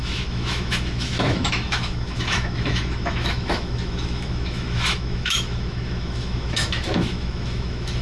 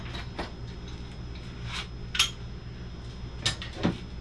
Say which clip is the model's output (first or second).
first